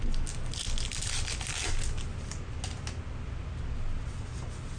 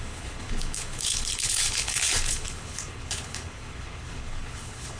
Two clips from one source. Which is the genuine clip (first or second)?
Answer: first